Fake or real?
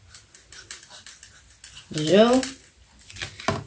real